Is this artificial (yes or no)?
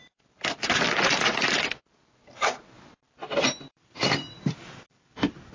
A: yes